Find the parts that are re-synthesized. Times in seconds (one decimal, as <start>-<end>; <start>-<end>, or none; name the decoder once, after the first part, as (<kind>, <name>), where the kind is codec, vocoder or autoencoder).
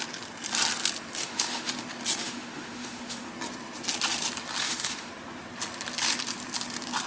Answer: 1.2-1.7 (autoencoder, DAC-VAE); 2.2-3.3; 4.6-5.1